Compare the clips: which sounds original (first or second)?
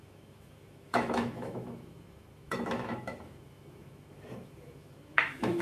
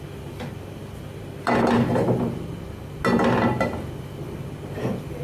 second